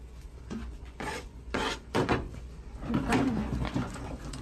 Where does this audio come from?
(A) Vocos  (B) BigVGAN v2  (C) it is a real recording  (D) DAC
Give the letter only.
A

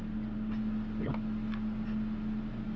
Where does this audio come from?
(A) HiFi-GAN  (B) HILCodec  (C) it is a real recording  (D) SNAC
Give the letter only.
C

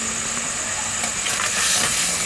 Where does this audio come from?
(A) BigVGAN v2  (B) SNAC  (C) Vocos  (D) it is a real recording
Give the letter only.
D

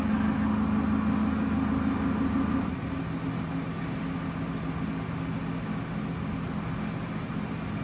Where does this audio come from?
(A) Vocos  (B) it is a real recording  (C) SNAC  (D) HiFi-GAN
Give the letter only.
B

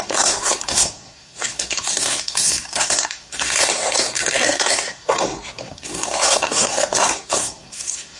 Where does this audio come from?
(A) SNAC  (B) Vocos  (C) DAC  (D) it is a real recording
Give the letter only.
A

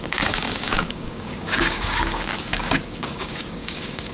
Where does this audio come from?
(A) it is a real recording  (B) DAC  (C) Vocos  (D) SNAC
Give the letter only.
B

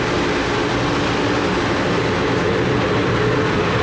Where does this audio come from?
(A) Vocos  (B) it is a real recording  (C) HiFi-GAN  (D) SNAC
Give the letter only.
B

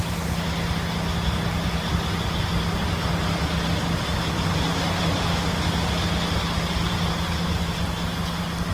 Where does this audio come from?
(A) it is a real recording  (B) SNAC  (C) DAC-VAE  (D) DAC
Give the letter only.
A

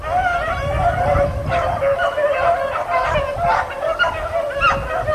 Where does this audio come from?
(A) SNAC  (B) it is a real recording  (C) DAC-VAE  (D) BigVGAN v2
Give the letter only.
B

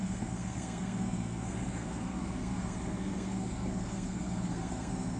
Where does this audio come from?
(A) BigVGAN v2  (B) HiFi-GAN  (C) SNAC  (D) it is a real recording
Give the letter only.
C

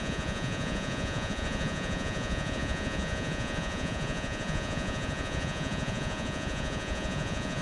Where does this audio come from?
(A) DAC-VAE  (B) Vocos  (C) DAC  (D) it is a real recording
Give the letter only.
B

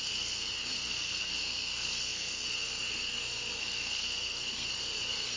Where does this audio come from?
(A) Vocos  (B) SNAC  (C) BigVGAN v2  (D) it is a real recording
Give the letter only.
B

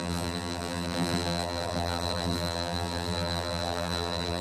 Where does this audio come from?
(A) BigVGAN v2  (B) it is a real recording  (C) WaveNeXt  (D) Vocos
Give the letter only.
A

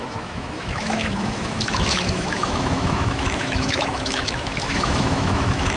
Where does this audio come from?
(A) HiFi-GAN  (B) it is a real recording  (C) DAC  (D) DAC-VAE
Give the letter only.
D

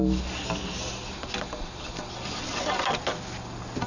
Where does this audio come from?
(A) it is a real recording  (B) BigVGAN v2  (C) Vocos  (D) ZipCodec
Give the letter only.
A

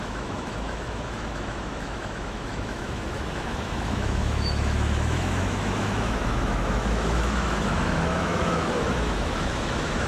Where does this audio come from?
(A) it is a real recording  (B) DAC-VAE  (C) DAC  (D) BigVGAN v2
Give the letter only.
B